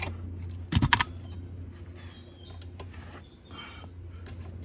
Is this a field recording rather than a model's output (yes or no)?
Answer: yes